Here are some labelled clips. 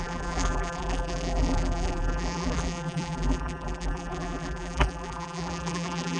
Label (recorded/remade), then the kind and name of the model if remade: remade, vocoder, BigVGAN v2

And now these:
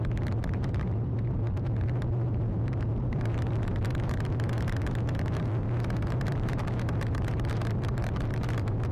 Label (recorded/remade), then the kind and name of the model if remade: remade, vocoder, BigVGAN v2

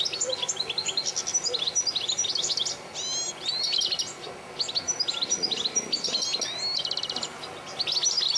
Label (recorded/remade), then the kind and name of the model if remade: recorded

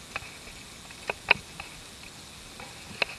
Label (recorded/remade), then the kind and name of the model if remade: recorded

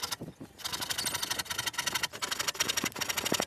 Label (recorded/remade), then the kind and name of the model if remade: recorded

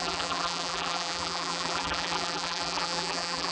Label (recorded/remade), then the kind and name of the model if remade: remade, vocoder, BigVGAN v2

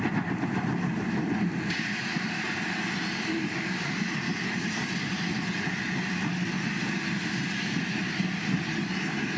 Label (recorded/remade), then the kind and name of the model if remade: recorded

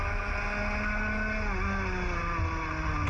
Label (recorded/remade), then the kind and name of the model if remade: recorded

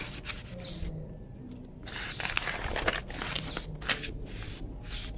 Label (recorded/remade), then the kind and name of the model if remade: recorded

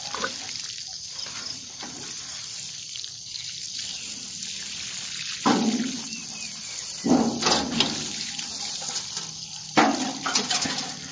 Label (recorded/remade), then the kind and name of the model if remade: remade, vocoder, BigVGAN v2